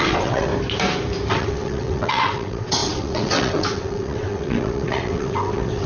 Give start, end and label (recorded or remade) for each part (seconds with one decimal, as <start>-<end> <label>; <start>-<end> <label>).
0.0-0.5 remade; 0.5-1.3 recorded; 1.3-5.9 remade